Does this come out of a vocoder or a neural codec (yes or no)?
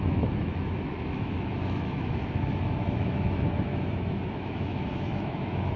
yes